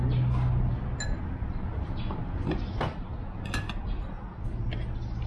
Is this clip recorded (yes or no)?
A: yes